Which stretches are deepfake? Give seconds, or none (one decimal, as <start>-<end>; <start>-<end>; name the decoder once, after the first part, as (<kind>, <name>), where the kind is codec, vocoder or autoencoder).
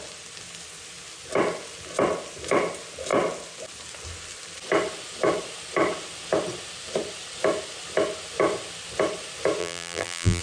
9.6-10.4 (vocoder, BigVGAN v2)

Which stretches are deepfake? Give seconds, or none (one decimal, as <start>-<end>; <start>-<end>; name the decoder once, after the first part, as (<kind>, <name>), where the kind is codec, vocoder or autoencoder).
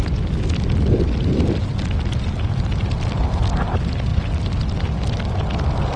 none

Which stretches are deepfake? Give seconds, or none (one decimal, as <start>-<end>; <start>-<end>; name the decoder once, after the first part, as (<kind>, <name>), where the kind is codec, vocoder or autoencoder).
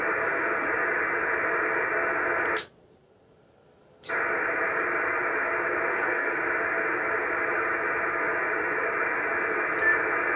5.9-6.4 (codec, SNAC)